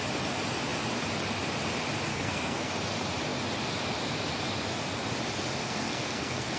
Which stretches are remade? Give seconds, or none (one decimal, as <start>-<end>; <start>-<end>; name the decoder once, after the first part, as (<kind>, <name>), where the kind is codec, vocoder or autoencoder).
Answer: 2.1-2.7 (codec, SNAC); 5.6-6.6

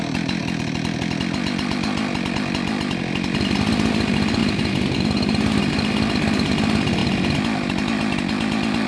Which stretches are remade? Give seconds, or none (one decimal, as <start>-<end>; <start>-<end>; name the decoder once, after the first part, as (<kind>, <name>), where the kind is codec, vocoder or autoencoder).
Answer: 4.4-5.6 (vocoder, BigVGAN v2)

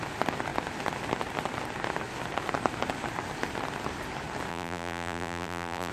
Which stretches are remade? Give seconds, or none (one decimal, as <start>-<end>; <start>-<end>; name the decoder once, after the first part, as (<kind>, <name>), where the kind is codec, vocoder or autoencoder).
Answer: 4.5-5.9 (vocoder, BigVGAN v2)

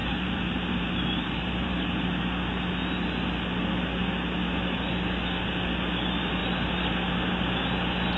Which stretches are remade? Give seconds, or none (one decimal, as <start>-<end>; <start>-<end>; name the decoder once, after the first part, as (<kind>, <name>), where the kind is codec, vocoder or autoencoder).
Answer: 0.0-1.9 (vocoder, BigVGAN v2)

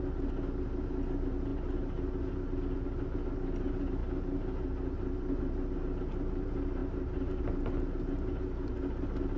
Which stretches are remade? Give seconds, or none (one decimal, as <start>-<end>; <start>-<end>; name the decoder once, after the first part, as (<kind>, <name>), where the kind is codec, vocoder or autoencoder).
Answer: none

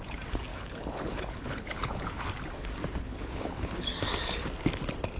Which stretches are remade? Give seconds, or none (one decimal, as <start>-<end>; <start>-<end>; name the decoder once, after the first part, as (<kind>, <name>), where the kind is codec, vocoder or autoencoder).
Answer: 0.5-2.2 (codec, HILCodec); 3.1-3.7

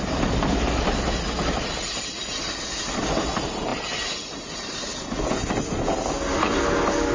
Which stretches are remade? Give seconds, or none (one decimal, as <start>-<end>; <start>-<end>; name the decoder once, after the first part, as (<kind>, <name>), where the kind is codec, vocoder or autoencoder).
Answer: none

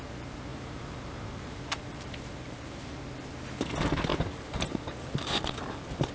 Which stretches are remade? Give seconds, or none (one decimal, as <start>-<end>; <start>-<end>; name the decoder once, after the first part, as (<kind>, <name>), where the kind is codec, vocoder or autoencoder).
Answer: 0.5-2.8 (vocoder, BigVGAN v2); 4.1-6.1